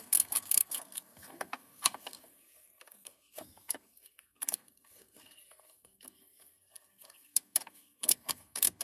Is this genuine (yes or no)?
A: no